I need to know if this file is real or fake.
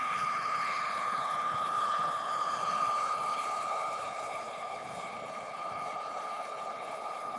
fake